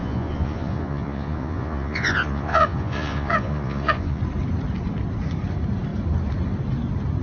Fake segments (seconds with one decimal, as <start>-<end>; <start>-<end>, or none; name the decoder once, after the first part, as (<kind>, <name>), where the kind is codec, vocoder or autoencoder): 0.0-4.2 (vocoder, Vocos)